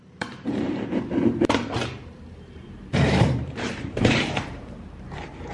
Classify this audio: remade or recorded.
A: remade